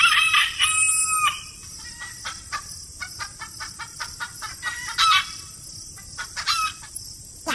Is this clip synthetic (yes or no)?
no